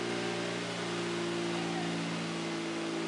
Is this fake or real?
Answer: real